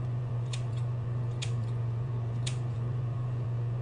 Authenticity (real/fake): fake